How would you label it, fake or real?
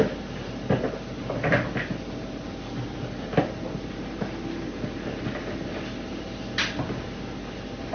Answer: real